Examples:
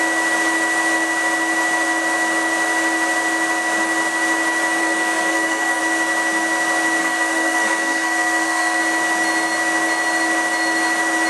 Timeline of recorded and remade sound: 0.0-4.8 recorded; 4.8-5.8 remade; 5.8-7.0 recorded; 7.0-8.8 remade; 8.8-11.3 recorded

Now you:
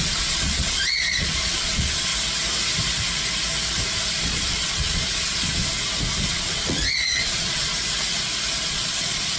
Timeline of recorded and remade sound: 0.0-2.1 remade; 2.1-4.2 recorded; 4.2-5.6 remade; 5.6-6.3 recorded; 6.3-7.7 remade; 7.7-8.7 recorded; 8.7-9.4 remade

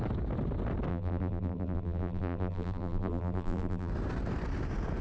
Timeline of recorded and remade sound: 0.0-0.9 recorded; 0.9-3.9 remade; 3.9-5.0 recorded

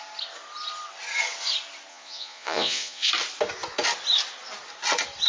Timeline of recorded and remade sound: 0.0-1.9 recorded; 1.9-3.1 remade; 3.1-5.3 recorded